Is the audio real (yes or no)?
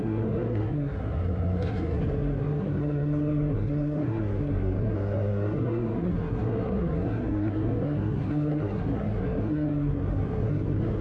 no